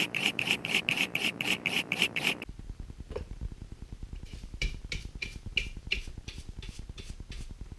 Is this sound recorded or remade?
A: remade